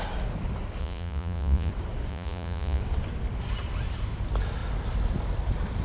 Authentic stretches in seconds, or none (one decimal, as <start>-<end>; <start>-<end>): 0.0-0.8; 1.7-2.1; 2.8-5.8